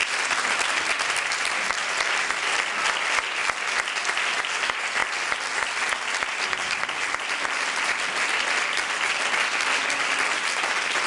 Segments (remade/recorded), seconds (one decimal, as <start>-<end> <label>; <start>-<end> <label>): 0.0-11.1 recorded